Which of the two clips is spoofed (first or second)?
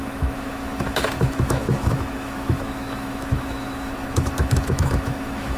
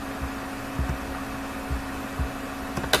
first